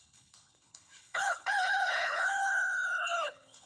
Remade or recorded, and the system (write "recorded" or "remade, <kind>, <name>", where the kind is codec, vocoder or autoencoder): remade, codec, HILCodec